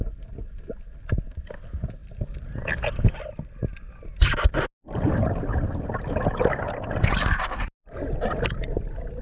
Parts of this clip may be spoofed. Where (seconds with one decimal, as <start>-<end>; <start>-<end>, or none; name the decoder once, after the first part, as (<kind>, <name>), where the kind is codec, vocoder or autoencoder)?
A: none